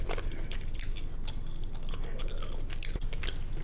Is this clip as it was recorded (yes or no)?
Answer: yes